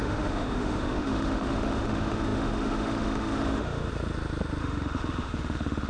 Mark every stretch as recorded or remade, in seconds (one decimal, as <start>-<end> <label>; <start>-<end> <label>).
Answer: 0.0-3.9 remade; 3.9-4.6 recorded; 4.6-5.9 remade